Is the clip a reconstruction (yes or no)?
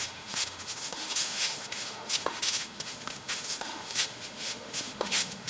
yes